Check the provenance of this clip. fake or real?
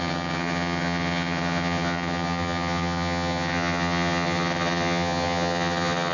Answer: fake